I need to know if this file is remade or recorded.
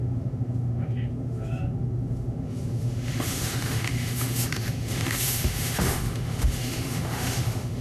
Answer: remade